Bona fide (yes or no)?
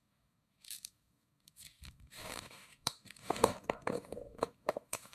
no